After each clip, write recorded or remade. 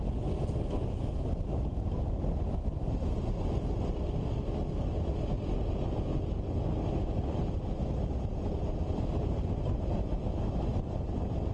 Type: recorded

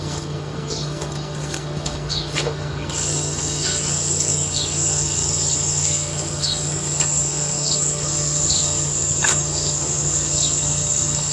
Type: remade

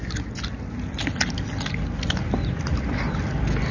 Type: recorded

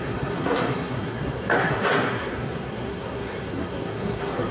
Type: remade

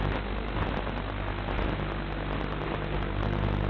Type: recorded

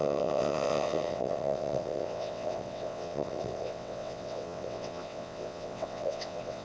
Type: remade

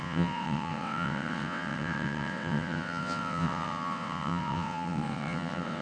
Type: remade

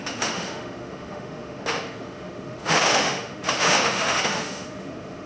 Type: remade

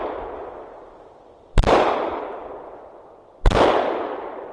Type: recorded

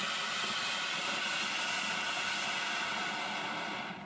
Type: recorded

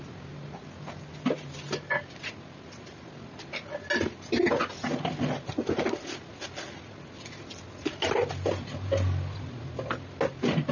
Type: recorded